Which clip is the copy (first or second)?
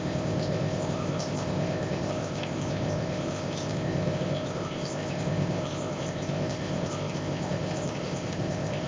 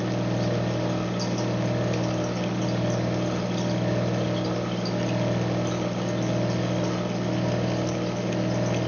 first